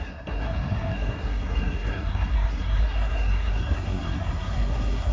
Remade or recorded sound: remade